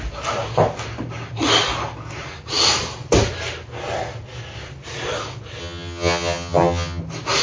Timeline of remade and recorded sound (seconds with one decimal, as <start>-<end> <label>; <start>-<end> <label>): 0.0-5.6 recorded; 5.6-7.0 remade; 7.0-7.4 recorded